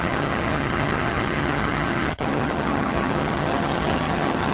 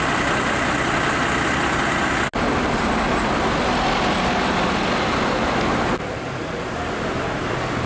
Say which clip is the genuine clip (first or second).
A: second